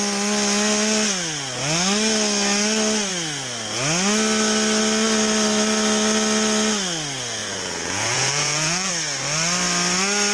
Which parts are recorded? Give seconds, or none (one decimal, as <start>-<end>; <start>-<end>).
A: 0.0-7.4; 8.9-10.3